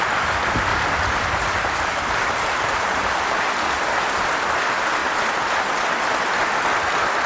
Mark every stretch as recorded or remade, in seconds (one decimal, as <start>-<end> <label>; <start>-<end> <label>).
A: 0.0-0.7 recorded; 0.7-3.7 remade; 3.7-7.3 recorded

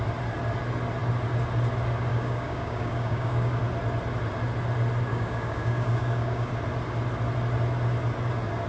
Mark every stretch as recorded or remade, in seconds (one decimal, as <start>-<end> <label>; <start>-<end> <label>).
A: 0.0-2.1 recorded; 2.1-3.6 remade; 3.6-5.1 recorded; 5.1-6.5 remade; 6.5-8.7 recorded

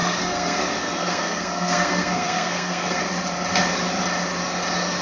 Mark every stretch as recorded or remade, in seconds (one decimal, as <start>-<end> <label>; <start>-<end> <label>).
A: 0.0-3.0 remade; 3.0-5.0 recorded